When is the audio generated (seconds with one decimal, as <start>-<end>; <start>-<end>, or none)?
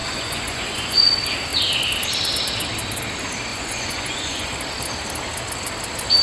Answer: 0.0-1.1; 3.5-4.5